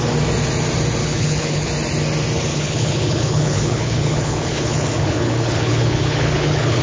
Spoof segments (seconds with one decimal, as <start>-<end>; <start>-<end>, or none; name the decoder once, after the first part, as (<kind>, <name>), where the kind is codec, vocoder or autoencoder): 1.0-1.7 (codec, HILCodec); 2.5-6.8